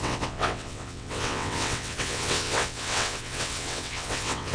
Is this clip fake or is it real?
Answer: fake